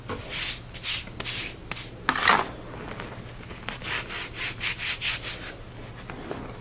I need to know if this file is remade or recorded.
recorded